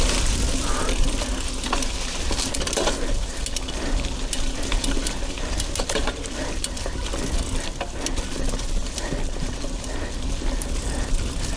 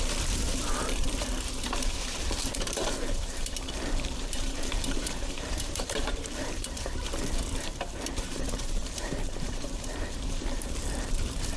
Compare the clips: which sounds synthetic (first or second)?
second